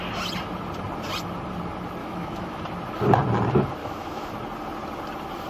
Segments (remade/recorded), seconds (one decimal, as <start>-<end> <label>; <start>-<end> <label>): 0.0-2.0 recorded; 2.0-2.6 remade; 2.6-3.8 recorded; 3.8-4.3 remade; 4.3-5.5 recorded